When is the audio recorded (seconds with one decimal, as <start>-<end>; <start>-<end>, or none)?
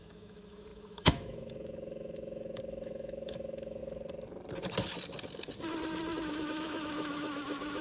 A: 3.8-6.3